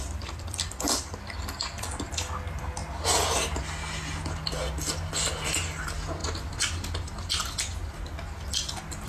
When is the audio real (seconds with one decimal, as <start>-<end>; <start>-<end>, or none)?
0.0-9.1